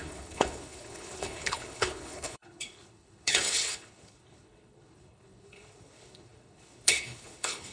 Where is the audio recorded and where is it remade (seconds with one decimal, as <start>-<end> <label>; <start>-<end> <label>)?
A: 0.0-7.7 remade